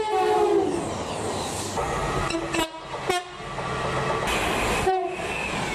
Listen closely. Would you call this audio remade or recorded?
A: recorded